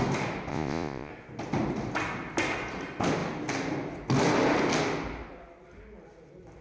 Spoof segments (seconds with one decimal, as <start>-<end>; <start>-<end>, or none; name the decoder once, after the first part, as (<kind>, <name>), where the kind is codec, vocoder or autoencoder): 0.5-1.1 (vocoder, Vocos)